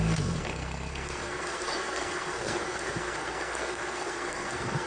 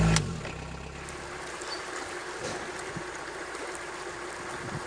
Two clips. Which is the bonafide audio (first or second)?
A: second